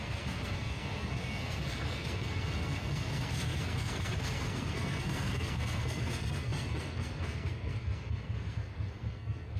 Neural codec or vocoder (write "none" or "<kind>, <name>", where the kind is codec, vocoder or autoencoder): codec, SNAC